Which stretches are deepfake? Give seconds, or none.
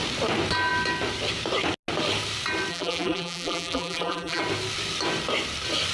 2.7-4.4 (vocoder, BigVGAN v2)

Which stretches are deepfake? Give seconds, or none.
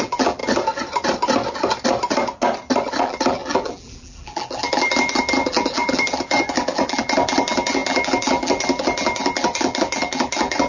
0.0-0.4 (vocoder, BigVGAN v2); 2.9-10.7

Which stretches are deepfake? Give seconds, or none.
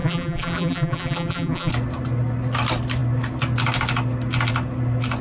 0.0-1.7 (vocoder, BigVGAN v2)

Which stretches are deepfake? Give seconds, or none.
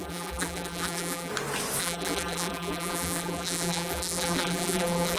0.0-1.3 (vocoder, BigVGAN v2); 1.8-5.2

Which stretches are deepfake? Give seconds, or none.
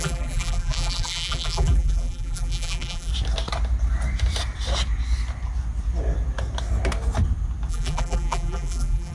0.0-3.1 (vocoder, BigVGAN v2); 7.7-9.1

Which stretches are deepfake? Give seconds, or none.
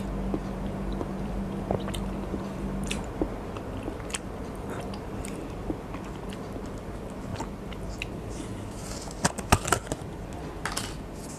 0.4-5.2 (vocoder, BigVGAN v2)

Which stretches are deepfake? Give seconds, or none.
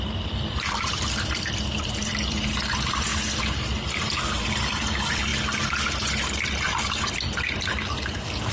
0.0-3.1 (vocoder, BigVGAN v2); 4.6-5.3